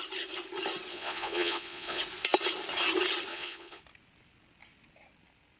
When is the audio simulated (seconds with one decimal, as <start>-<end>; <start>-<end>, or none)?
0.9-2.0; 3.3-3.8